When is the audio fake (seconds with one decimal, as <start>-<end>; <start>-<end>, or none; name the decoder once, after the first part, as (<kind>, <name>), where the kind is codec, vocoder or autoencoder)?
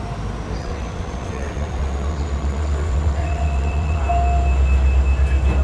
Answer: 0.6-4.0 (vocoder, WaveNeXt)